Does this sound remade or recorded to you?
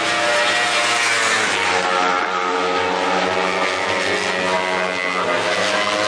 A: recorded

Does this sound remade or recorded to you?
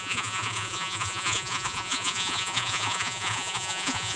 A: remade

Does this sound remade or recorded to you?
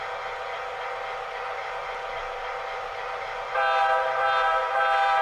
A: recorded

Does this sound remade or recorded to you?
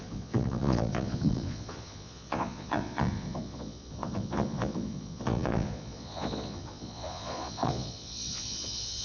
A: remade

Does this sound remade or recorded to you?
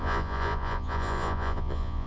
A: remade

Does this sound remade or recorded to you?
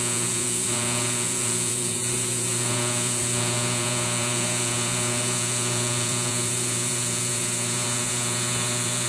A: remade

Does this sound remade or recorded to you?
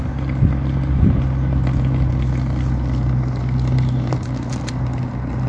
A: recorded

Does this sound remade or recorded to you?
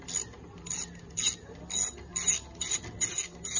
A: recorded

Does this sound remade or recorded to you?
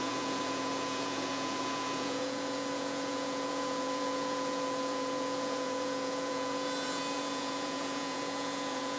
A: remade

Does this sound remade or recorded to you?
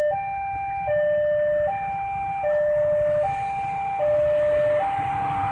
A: recorded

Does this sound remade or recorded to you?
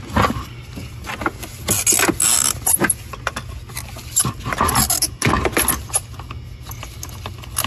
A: recorded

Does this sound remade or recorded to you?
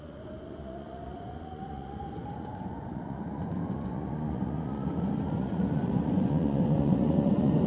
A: remade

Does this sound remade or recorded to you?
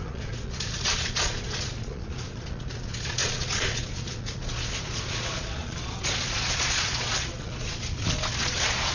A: remade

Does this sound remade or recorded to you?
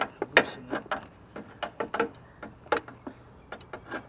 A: recorded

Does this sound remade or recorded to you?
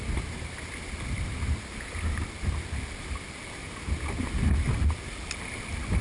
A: recorded